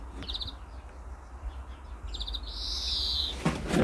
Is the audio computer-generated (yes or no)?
no